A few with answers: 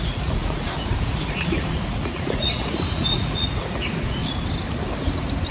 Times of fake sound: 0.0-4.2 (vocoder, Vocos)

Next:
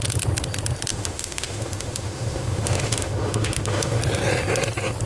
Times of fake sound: 0.9-4.0 (autoencoder, DAC-VAE)

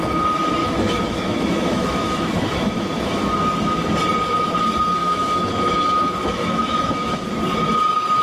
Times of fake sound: 0.6-3.3 (autoencoder, DAC-VAE); 5.0-7.2

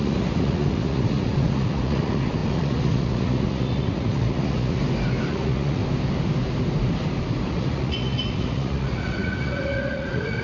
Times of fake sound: 0.0-4.8 (vocoder, Vocos); 5.3-5.8; 7.5-10.4

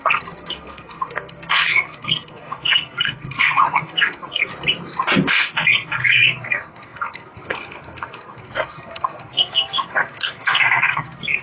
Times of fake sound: 0.0-4.5 (codec, SNAC); 5.3-11.4

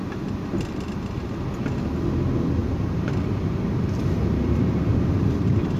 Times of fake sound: 2.6-4.9 (vocoder, BigVGAN v2)

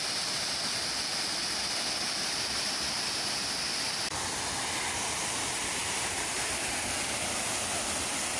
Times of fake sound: 5.8-6.7 (vocoder, BigVGAN v2)

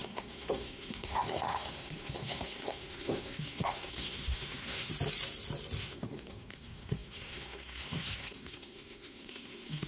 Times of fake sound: 0.0-4.9 (codec, SNAC); 5.8-9.9